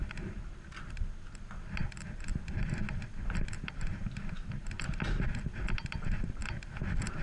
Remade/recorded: recorded